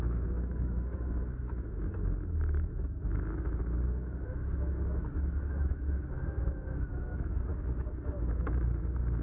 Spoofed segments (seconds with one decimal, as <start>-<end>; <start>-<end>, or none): 0.0-9.2